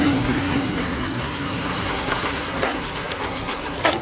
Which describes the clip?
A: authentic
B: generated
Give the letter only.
B